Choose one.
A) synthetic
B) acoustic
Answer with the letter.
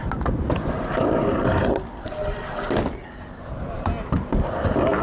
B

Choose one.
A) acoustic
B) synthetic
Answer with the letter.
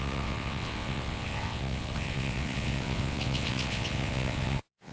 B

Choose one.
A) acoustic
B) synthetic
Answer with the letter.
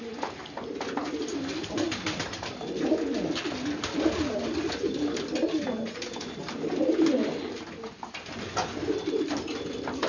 A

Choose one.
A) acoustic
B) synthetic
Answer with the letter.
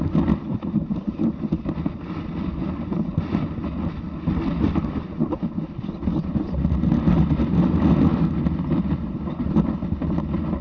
A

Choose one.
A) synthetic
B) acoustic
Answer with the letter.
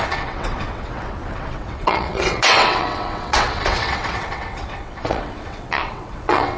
A